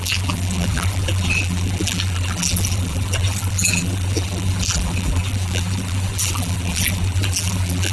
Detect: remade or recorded remade